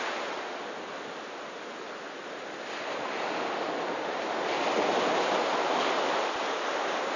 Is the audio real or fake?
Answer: real